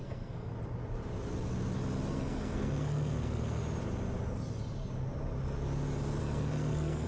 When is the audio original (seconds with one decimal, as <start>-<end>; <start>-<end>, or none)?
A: 0.5-2.1; 3.6-6.2